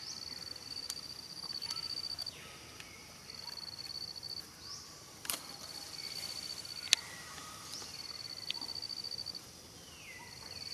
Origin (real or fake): real